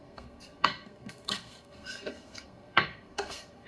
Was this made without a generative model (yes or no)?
no